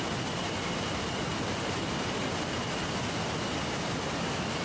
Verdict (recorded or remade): recorded